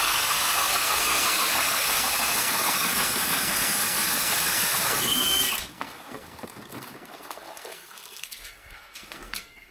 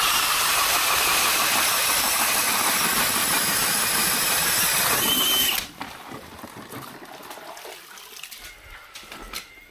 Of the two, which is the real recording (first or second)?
second